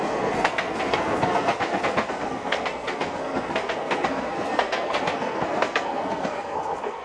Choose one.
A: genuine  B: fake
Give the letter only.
B